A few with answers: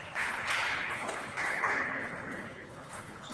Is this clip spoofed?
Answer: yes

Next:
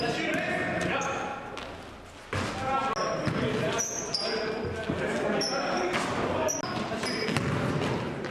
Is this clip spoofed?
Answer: no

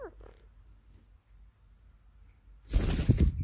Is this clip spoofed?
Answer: no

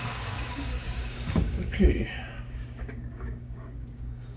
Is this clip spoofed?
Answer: yes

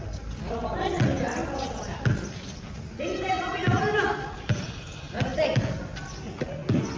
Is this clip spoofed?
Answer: no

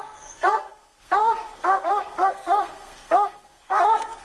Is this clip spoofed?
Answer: yes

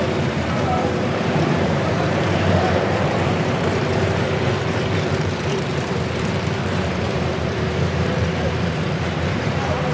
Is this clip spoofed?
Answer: yes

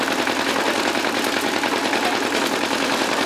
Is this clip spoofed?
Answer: no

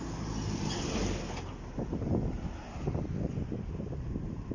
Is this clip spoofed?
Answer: no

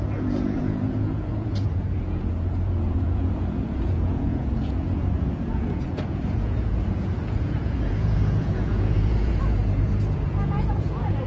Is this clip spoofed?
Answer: yes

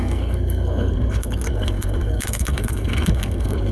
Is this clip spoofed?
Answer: yes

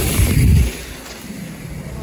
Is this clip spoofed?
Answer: yes